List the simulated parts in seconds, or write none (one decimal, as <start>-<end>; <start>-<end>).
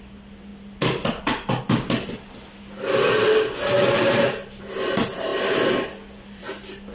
0.0-0.5; 4.6-5.3; 6.4-6.9